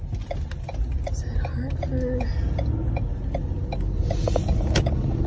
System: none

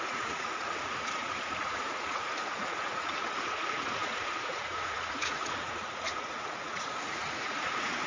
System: vocoder, Vocos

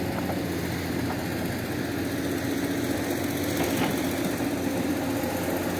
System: none